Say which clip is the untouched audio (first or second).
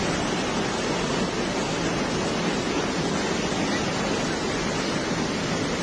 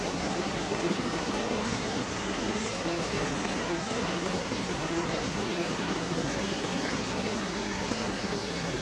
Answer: first